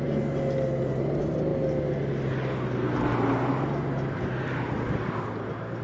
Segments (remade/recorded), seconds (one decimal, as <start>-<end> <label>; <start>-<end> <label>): 0.0-5.8 recorded

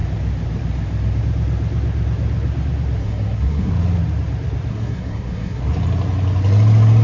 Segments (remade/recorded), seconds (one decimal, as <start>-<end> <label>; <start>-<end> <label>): 0.0-3.0 recorded; 3.0-3.7 remade; 3.7-4.7 recorded; 4.7-5.6 remade; 5.6-7.0 recorded

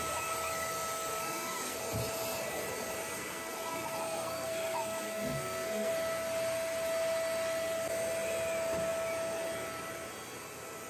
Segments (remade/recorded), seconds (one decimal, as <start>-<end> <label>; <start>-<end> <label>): 0.0-1.1 recorded; 1.1-1.8 remade; 1.8-3.0 recorded; 3.0-5.9 remade; 5.9-10.9 recorded

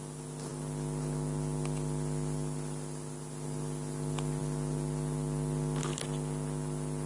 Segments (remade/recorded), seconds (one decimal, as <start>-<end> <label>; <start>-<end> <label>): 0.0-7.1 recorded

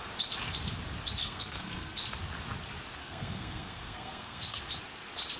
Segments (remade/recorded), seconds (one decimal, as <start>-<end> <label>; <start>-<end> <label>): 0.0-1.2 recorded; 1.2-2.0 remade; 2.0-3.0 recorded; 3.0-4.6 remade; 4.6-5.4 recorded

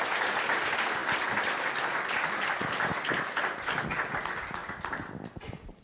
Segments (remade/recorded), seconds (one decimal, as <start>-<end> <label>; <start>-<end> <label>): 0.0-5.8 recorded

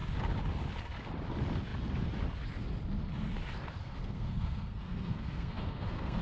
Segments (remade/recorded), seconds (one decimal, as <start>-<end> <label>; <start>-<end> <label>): 0.0-3.8 recorded; 3.8-6.2 remade